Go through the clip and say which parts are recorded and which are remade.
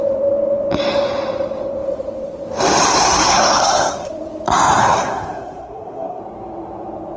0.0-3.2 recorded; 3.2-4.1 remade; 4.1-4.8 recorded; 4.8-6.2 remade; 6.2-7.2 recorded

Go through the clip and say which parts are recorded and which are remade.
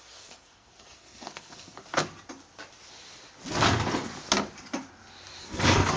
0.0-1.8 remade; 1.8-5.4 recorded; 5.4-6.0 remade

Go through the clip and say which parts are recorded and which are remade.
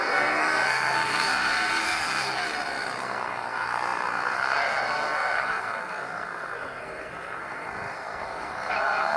0.0-2.4 remade; 2.4-3.0 recorded; 3.0-9.2 remade